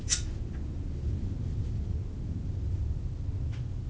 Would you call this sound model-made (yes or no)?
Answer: no